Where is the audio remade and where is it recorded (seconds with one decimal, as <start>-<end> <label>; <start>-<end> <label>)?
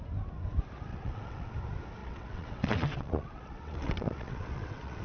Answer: 0.0-0.9 recorded; 0.9-1.5 remade; 1.5-2.0 recorded; 2.0-5.0 remade